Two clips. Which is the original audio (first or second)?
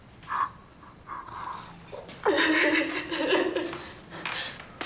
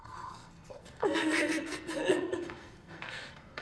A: first